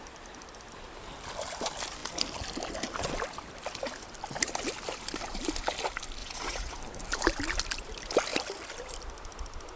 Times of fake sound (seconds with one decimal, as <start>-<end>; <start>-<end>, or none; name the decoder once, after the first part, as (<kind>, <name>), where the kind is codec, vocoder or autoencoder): 6.2-6.8 (vocoder, Vocos)